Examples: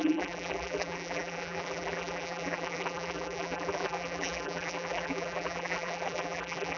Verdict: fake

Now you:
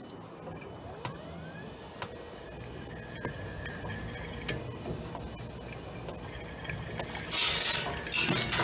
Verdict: real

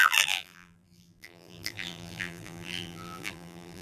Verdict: fake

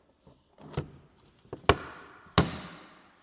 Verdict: real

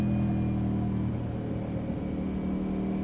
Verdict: real